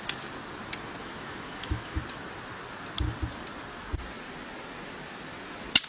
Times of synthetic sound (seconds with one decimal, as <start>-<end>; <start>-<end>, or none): 1.0-2.0